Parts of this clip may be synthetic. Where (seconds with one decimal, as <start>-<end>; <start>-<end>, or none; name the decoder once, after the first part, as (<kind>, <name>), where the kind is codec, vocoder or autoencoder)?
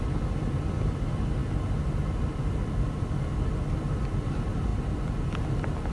none